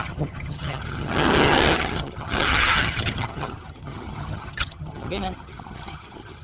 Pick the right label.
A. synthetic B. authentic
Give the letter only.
A